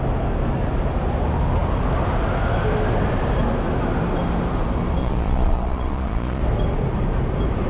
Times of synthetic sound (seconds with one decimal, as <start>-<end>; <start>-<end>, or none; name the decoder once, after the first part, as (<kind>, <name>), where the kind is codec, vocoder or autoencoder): 5.0-6.4 (vocoder, Vocos)